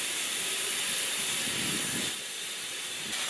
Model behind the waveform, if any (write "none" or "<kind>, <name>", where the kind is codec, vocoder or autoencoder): vocoder, BigVGAN v2